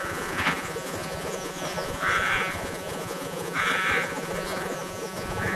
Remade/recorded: remade